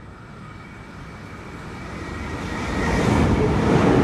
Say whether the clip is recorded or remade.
recorded